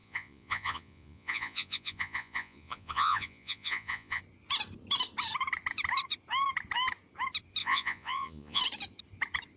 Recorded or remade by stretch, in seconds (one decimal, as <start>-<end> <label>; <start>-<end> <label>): 0.0-4.2 remade; 4.2-7.6 recorded; 7.6-8.6 remade; 8.6-9.6 recorded